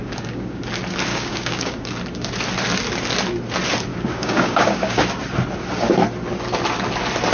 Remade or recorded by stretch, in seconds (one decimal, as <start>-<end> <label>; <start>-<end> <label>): 0.0-0.6 remade; 0.6-1.1 recorded; 1.1-1.9 remade; 1.9-3.9 recorded; 3.9-5.0 remade; 5.0-7.3 recorded